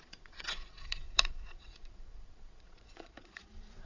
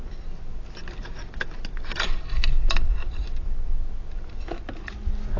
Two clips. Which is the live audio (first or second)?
second